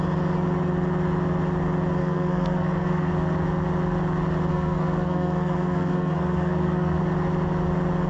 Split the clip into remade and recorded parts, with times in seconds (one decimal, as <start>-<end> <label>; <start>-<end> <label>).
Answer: 0.0-2.0 recorded; 2.0-3.1 remade; 3.1-4.5 recorded; 4.5-7.0 remade; 7.0-8.1 recorded